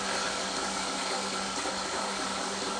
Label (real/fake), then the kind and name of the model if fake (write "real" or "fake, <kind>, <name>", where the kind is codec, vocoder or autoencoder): fake, codec, DAC